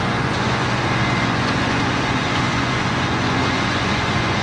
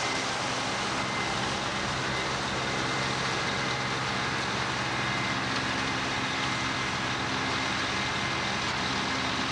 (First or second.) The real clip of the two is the second